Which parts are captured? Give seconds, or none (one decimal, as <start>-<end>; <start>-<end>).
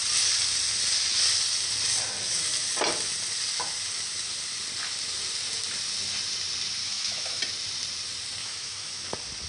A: 0.0-6.8; 7.4-8.4; 9.0-9.5